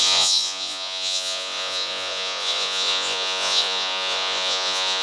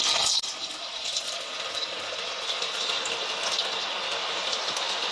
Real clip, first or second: second